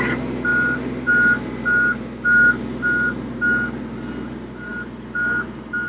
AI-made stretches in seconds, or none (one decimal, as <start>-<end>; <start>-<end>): none